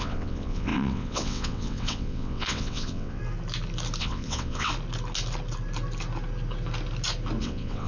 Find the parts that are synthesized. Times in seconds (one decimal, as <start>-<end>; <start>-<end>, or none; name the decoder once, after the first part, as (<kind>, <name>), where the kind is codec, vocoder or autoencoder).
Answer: 0.0-3.2 (vocoder, WaveNeXt); 4.0-4.7; 7.4-7.9